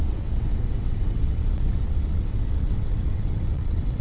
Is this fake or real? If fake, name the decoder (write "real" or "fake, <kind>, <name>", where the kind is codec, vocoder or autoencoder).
fake, vocoder, WaveNeXt